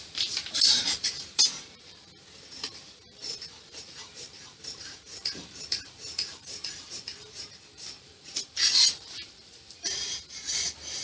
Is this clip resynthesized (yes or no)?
yes